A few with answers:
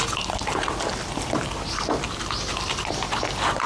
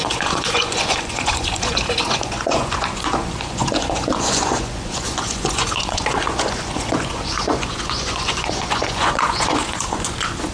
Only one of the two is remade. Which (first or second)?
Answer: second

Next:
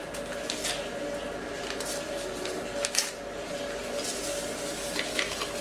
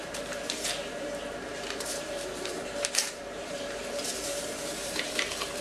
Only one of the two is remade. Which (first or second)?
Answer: second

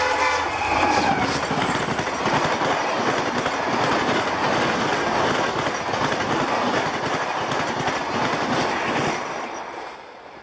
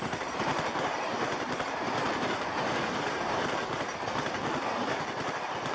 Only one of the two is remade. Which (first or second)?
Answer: second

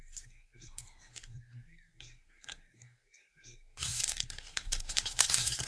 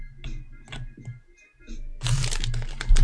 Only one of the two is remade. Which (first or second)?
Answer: first